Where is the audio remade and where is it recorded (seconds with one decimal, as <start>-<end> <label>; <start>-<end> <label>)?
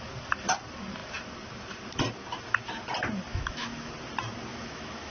0.0-3.3 recorded; 3.3-3.9 remade; 3.9-4.5 recorded; 4.5-5.1 remade